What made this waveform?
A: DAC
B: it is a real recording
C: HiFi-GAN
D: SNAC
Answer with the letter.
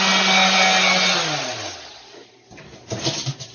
B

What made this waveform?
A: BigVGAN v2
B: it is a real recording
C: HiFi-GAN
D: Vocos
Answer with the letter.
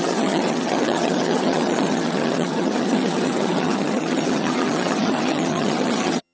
C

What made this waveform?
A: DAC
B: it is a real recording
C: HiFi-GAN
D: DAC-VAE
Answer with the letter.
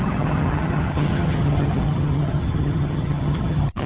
C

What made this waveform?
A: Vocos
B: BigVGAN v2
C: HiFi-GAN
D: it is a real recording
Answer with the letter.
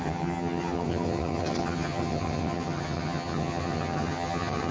C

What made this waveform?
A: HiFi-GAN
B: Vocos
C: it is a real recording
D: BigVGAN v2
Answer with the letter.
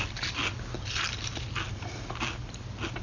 C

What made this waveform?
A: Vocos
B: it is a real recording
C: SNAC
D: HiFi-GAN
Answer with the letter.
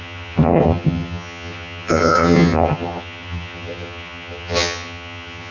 D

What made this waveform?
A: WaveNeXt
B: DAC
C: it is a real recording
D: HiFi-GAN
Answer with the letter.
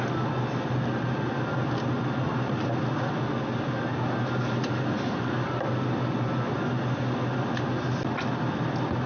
C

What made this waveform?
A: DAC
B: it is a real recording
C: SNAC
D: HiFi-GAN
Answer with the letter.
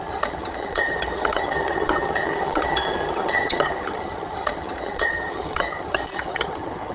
D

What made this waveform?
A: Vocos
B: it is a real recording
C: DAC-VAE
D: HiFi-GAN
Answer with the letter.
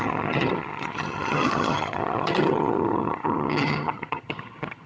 D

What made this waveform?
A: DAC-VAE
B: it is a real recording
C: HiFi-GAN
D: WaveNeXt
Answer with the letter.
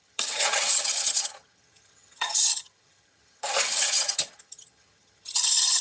C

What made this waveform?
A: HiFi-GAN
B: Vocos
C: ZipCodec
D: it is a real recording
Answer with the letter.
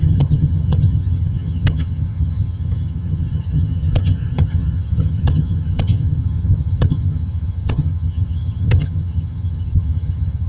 A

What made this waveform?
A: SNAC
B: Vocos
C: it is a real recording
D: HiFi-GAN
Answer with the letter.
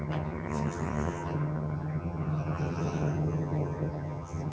D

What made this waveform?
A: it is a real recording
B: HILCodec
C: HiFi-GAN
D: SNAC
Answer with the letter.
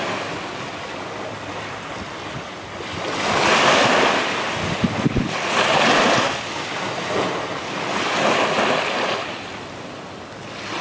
A